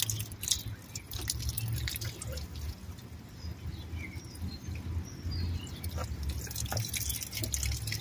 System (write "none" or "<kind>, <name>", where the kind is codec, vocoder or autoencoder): none